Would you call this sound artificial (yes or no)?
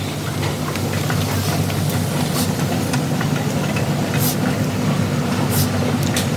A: no